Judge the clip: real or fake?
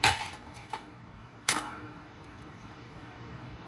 fake